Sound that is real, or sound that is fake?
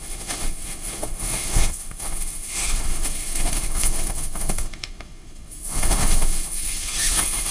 fake